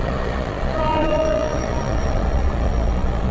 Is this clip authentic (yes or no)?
no